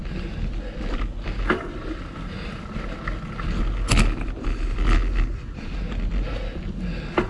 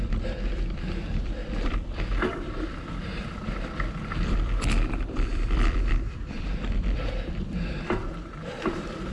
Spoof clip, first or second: second